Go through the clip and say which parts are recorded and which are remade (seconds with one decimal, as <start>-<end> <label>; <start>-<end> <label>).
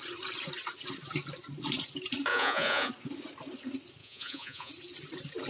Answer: 0.0-2.3 recorded; 2.3-2.9 remade; 2.9-4.0 recorded; 4.0-4.7 remade; 4.7-5.5 recorded